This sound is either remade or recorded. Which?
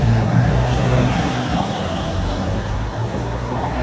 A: remade